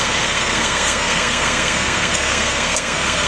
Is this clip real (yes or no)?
no